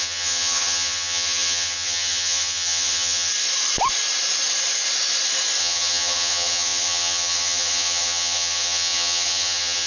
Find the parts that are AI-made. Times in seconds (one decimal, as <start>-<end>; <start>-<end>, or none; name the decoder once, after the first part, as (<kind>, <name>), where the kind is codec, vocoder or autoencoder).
0.0-3.3 (vocoder, HiFi-GAN); 5.6-9.9

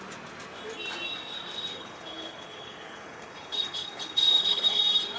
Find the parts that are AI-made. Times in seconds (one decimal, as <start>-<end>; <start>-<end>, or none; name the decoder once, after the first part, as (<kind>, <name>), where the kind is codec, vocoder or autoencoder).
1.7-4.8 (codec, HILCodec)

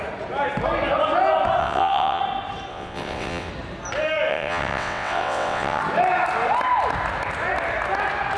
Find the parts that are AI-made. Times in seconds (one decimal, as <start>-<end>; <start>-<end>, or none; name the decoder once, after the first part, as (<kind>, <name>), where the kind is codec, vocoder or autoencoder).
1.6-2.2 (vocoder, WaveNeXt); 2.7-3.5; 4.3-5.8

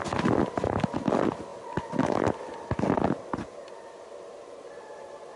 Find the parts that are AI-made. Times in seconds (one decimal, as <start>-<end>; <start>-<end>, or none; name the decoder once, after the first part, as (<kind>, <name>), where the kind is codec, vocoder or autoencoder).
none